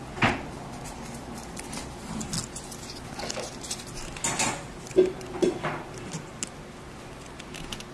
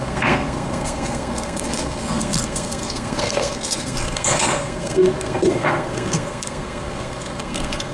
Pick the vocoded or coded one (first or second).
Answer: second